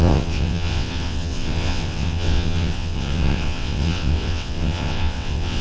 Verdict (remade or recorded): remade